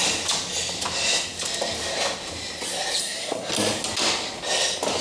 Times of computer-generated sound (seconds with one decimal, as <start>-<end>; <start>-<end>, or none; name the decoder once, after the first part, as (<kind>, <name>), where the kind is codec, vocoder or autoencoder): 3.0-3.5 (codec, SNAC)